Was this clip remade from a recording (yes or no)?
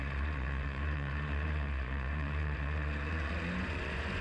yes